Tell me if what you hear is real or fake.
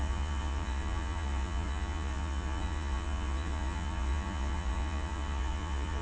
fake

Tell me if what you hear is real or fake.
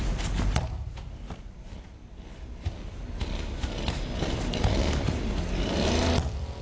real